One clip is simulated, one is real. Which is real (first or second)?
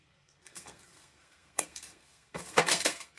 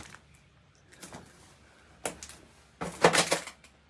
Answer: second